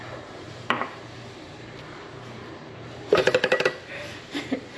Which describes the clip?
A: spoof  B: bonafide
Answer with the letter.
A